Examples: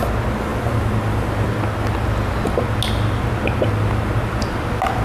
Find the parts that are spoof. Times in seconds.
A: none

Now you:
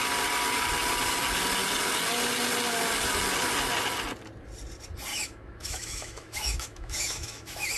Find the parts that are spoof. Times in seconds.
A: 5.1-7.8 (autoencoder, DAC-VAE)

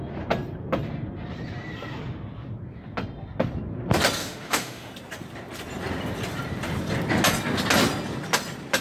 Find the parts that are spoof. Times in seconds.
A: 4.2-4.9 (autoencoder, DAC-VAE)

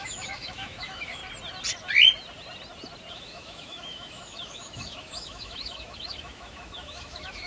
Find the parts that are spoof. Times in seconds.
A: 0.0-1.2 (autoencoder, DAC-VAE); 3.1-7.5